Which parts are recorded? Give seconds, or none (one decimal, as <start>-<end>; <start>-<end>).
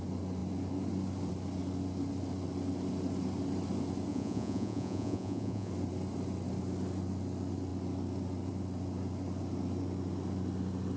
0.0-4.1; 5.7-11.0